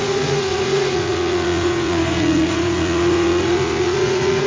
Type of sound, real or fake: fake